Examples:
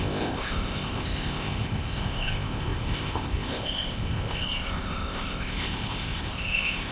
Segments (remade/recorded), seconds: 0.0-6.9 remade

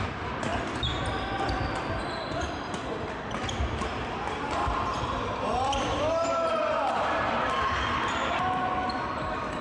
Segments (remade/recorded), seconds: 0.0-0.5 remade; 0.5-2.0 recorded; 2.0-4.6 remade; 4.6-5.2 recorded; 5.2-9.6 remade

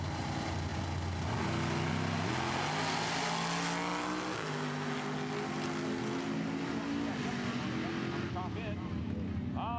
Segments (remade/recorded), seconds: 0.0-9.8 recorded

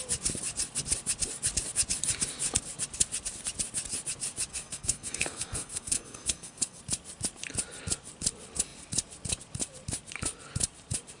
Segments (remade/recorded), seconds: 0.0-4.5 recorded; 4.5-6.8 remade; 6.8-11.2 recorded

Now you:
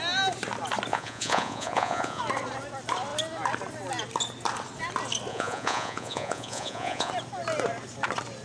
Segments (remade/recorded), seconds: 0.0-0.9 recorded; 0.9-2.2 remade; 2.2-5.3 recorded; 5.3-7.1 remade; 7.1-8.4 recorded

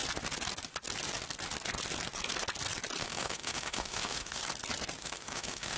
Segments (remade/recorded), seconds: 0.0-3.0 recorded; 3.0-4.4 remade; 4.4-5.0 recorded; 5.0-5.8 remade

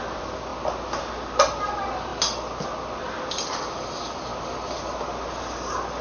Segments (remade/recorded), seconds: 0.0-6.0 recorded

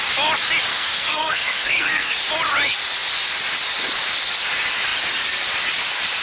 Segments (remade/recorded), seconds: 0.0-0.7 recorded; 0.7-2.1 remade; 2.1-6.2 recorded